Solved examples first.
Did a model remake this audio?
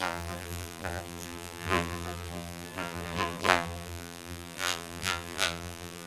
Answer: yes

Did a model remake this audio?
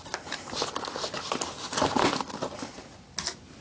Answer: no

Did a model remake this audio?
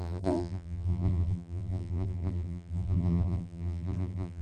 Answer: yes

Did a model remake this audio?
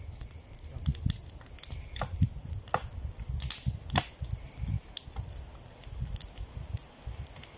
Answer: no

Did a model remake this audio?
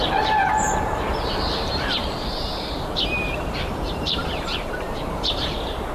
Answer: yes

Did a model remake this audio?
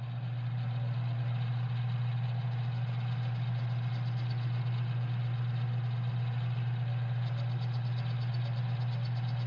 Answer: no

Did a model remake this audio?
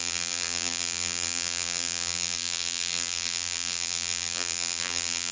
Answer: yes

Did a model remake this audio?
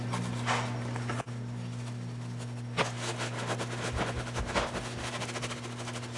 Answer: no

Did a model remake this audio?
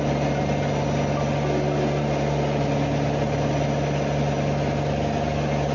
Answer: no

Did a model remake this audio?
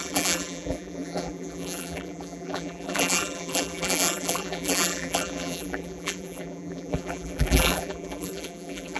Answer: yes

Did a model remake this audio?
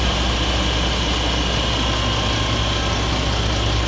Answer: no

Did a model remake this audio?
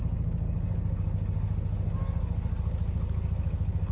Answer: no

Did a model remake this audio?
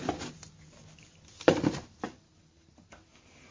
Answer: no